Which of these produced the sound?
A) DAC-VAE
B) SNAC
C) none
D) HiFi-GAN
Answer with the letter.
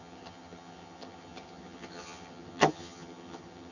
D